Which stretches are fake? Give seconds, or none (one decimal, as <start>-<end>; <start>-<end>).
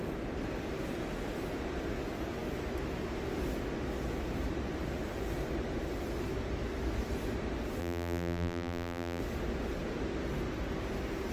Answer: 7.8-9.2